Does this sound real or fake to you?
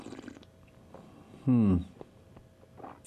real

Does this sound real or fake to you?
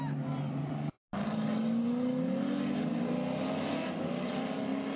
real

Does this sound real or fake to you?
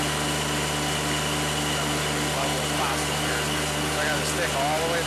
real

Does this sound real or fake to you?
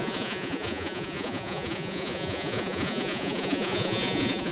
fake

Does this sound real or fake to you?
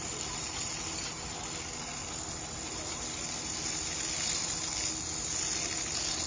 real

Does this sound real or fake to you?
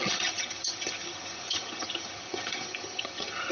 fake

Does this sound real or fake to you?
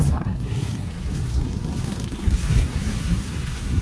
fake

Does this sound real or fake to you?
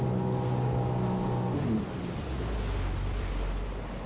real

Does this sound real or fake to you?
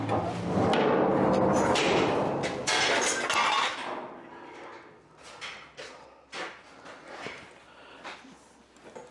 real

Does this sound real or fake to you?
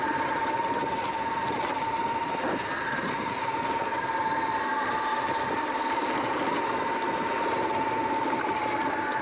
real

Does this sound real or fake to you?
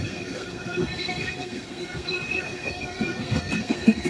fake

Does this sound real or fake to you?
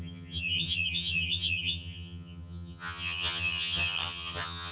fake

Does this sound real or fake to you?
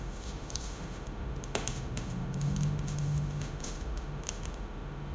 fake